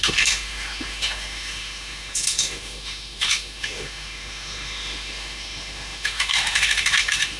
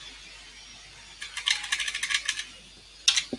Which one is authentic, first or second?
second